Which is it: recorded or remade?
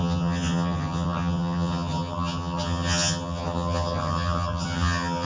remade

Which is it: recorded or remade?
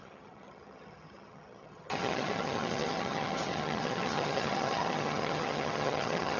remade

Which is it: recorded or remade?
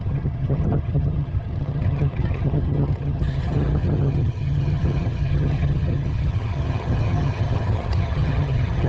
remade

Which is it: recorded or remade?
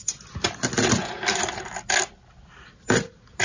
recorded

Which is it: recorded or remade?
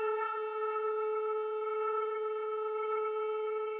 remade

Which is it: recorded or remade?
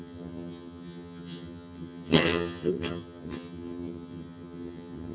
remade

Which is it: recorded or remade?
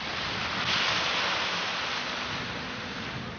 recorded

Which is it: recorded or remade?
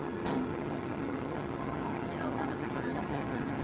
remade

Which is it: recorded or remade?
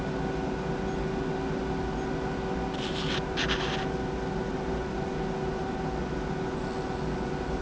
recorded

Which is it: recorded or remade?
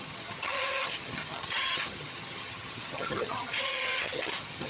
remade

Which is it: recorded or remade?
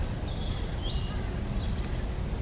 recorded